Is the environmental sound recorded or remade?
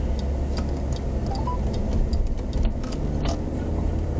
recorded